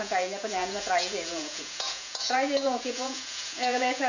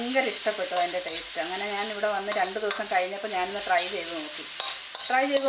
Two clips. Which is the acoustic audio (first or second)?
second